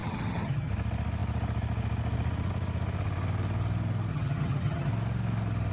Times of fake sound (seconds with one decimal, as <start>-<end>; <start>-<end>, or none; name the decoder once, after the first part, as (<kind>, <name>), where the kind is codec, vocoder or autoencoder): 0.0-0.7 (vocoder, HiFi-GAN); 4.1-4.9